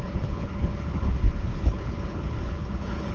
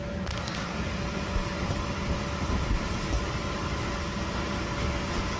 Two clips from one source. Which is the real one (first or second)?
second